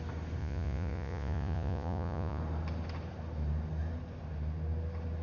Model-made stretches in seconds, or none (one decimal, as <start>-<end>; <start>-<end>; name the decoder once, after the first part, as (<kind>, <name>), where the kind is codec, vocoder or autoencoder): 0.4-2.4 (vocoder, Vocos)